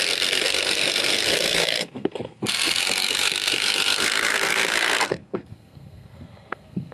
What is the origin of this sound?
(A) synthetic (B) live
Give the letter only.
A